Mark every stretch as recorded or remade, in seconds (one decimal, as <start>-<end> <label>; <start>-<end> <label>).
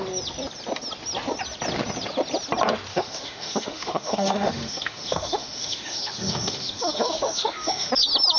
0.0-2.9 recorded; 2.9-7.9 remade; 7.9-8.4 recorded